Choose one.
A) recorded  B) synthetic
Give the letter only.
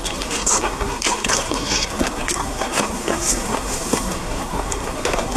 B